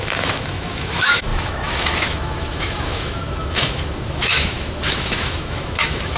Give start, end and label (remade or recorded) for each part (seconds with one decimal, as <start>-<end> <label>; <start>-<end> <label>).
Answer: 0.0-6.2 remade